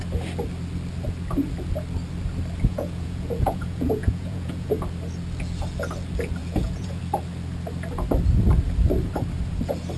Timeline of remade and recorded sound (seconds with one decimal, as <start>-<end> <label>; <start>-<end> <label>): 0.0-2.7 recorded; 2.7-4.7 remade; 4.7-6.4 recorded; 6.4-7.0 remade; 7.0-10.0 recorded